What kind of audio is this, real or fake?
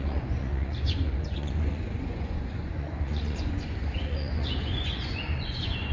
fake